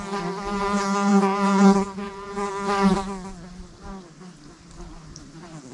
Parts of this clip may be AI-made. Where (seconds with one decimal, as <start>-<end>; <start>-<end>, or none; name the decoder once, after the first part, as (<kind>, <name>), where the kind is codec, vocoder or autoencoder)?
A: 1.1-2.5 (vocoder, Vocos)